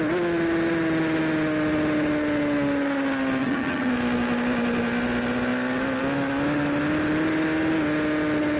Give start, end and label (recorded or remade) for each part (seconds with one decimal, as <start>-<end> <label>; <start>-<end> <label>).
0.0-3.4 recorded; 3.4-3.9 remade; 3.9-8.6 recorded